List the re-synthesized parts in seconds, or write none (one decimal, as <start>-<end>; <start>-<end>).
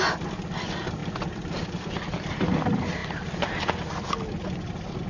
none